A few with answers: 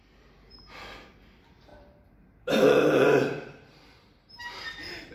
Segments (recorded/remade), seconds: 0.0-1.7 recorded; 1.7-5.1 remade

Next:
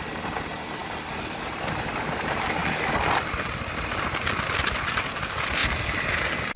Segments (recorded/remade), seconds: 0.0-6.6 recorded

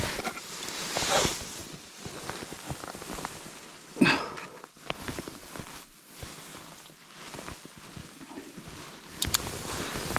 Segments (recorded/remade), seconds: 0.0-1.6 remade; 1.6-5.6 recorded; 5.6-10.2 remade